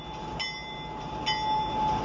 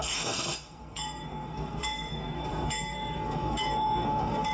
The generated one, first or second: second